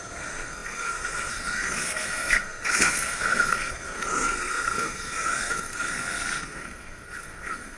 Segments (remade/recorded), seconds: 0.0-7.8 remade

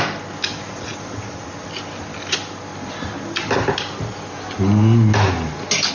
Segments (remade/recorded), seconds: 0.0-5.9 recorded

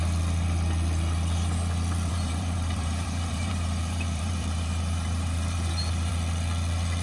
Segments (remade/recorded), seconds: 0.0-2.1 recorded; 2.1-6.1 remade; 6.1-7.0 recorded

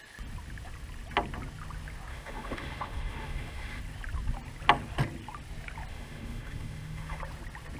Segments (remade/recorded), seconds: 0.0-2.1 recorded; 2.1-3.8 remade; 3.8-5.9 recorded; 5.9-7.2 remade; 7.2-7.8 recorded